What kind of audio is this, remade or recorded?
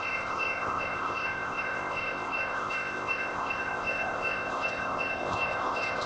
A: remade